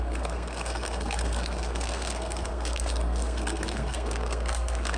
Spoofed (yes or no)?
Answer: yes